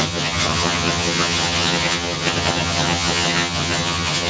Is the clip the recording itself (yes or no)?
no